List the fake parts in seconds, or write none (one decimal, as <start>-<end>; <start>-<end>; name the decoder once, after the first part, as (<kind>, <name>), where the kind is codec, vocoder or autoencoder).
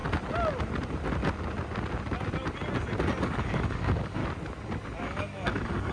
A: 3.2-4.2 (codec, DAC); 5.0-5.9